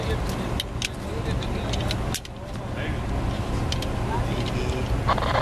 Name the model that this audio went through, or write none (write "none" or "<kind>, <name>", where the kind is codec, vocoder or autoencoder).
none